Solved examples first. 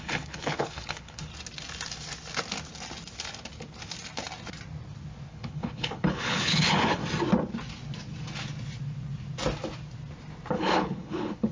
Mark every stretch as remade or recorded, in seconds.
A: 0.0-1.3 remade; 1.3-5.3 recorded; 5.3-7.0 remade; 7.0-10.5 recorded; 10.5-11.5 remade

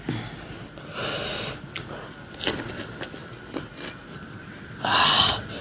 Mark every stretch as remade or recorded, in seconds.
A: 0.0-5.6 recorded

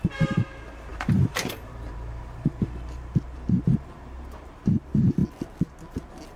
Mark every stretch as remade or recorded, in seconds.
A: 0.0-0.9 recorded; 0.9-4.7 remade; 4.7-6.4 recorded